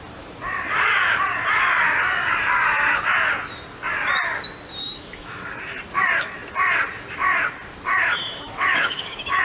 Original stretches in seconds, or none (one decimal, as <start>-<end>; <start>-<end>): 0.0-4.8; 5.4-8.0